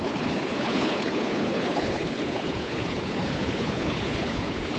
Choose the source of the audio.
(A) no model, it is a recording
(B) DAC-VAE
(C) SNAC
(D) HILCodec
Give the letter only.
D